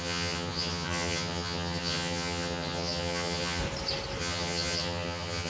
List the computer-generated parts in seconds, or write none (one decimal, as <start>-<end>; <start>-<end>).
0.0-3.6; 4.2-5.5